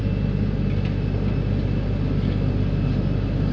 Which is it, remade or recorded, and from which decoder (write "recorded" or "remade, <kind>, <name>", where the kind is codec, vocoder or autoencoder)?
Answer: recorded